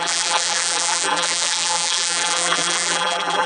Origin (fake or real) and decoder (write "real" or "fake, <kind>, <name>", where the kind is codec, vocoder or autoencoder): fake, vocoder, BigVGAN v2